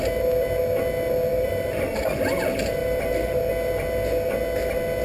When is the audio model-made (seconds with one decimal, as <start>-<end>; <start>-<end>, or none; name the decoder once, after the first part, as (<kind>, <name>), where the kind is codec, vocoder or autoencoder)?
1.3-2.1 (vocoder, BigVGAN v2); 2.8-3.4